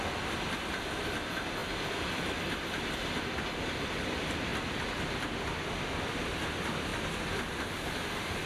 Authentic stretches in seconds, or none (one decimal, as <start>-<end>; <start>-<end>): 0.0-8.5